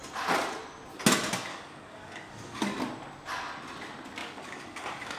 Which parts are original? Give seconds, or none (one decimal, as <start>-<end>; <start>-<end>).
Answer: 0.0-1.5; 2.8-4.2